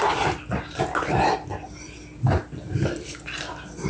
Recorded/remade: recorded